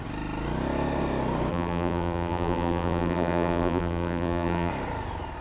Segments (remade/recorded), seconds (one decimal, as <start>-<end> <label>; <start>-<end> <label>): 0.0-1.5 recorded; 1.5-4.7 remade; 4.7-5.4 recorded